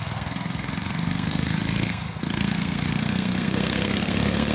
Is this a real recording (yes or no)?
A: no